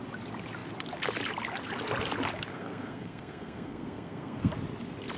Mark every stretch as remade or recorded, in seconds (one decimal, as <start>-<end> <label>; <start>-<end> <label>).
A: 0.0-2.5 recorded; 2.5-4.5 remade; 4.5-5.2 recorded